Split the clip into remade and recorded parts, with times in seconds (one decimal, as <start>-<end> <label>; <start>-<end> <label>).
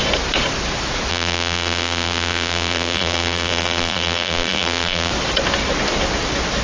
0.0-1.1 recorded; 1.1-5.1 remade; 5.1-6.6 recorded